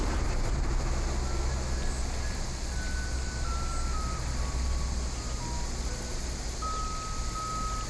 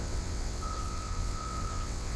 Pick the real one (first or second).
first